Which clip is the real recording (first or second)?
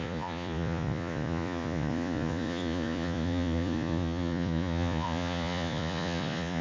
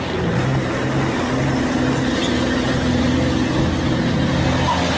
second